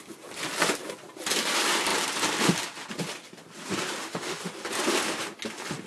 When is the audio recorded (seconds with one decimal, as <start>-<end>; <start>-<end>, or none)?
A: 0.0-4.0; 4.5-5.9